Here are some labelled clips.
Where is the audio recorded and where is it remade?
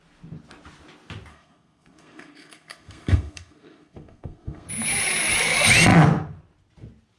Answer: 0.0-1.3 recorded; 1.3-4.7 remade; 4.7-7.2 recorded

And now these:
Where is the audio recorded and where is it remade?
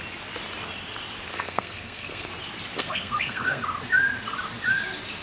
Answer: 0.0-1.3 recorded; 1.3-2.3 remade; 2.3-2.8 recorded; 2.8-3.6 remade; 3.6-5.2 recorded